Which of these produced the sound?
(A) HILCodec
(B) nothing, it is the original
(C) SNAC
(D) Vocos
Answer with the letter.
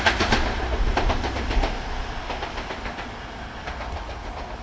B